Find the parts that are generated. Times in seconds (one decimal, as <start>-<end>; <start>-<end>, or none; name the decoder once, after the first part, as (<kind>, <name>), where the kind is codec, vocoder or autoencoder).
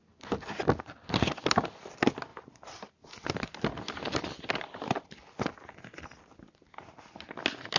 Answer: none